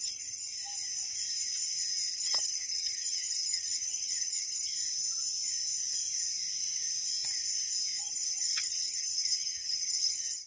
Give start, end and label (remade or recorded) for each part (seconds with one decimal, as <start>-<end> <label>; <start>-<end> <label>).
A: 0.0-0.5 remade; 0.5-2.1 recorded; 2.1-4.7 remade; 4.7-8.0 recorded; 8.0-10.5 remade